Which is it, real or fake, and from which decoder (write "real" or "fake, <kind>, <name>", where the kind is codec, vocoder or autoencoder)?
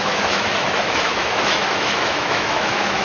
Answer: fake, autoencoder, DAC-VAE